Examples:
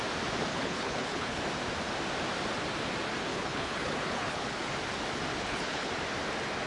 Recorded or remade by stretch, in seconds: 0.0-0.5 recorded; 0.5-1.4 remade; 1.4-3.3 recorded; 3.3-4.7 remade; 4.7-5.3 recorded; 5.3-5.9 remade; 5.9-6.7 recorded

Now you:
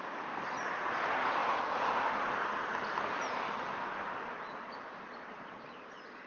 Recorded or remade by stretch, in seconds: 0.0-6.3 recorded

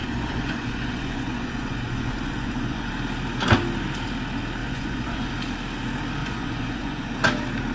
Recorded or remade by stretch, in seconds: 0.0-2.9 remade; 2.9-4.6 recorded; 4.6-5.3 remade; 5.3-6.2 recorded; 6.2-7.1 remade; 7.1-7.7 recorded

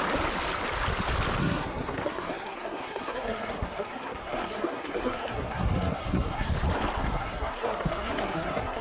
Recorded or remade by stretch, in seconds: 0.0-1.4 recorded; 1.4-6.5 remade; 6.5-7.0 recorded; 7.0-8.8 remade

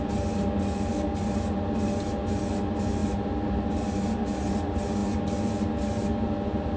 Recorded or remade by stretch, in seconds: 0.0-6.8 recorded

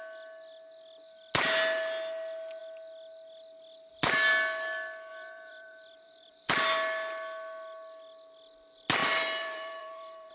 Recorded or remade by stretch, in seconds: 0.0-5.1 recorded; 5.1-6.5 remade; 6.5-9.0 recorded; 9.0-10.3 remade